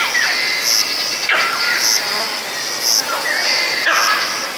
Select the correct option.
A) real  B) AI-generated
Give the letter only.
A